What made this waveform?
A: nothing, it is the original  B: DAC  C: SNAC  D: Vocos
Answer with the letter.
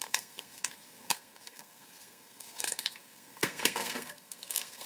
C